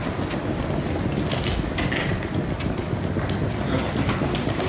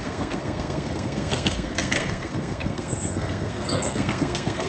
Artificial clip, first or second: second